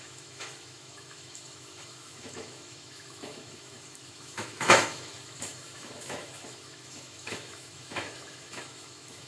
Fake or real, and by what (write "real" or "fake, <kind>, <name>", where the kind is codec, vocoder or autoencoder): fake, autoencoder, DAC-VAE